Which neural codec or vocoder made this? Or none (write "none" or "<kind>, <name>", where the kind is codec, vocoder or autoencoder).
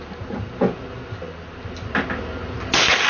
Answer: none